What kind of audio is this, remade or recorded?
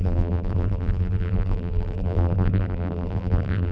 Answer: remade